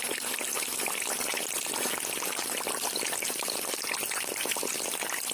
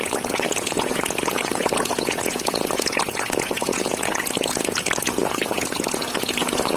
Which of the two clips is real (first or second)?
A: first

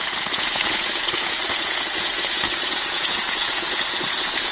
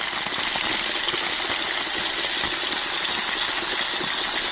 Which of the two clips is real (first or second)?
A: second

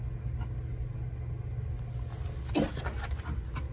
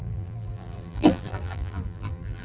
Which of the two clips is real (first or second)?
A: first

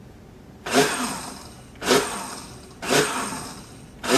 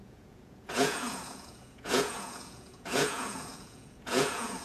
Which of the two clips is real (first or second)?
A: first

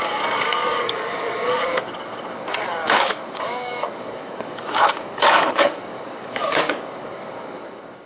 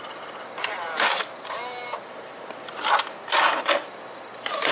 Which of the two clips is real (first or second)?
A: second